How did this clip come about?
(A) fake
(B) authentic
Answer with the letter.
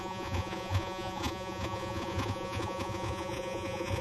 A